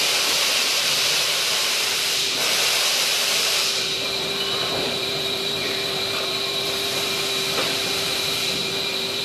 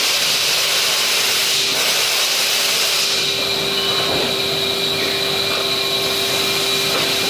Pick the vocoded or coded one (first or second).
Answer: first